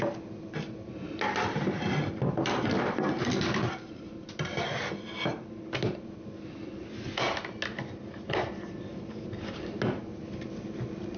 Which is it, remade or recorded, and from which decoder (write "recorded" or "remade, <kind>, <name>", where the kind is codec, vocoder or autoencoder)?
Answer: recorded